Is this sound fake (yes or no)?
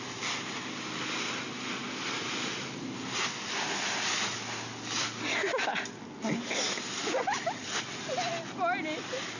no